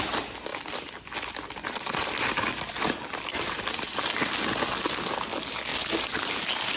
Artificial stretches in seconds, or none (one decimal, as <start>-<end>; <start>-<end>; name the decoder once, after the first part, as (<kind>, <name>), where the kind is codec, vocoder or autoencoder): 0.5-4.1 (vocoder, BigVGAN v2); 5.7-6.3